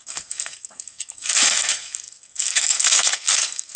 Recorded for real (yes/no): no